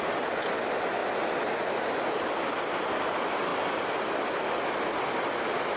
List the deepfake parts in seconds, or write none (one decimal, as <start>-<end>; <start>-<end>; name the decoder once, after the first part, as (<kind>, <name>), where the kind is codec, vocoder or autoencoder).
none